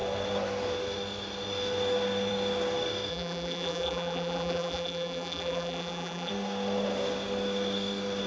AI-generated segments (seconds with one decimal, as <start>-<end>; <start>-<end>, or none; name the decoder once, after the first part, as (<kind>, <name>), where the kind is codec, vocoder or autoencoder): 3.1-6.3 (vocoder, BigVGAN v2)